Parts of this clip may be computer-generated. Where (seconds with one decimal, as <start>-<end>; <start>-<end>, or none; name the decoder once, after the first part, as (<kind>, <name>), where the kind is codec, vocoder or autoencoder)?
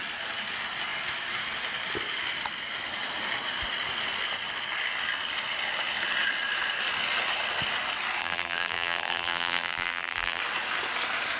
8.2-10.4 (vocoder, BigVGAN v2)